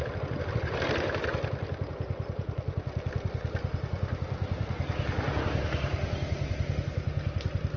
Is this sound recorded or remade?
recorded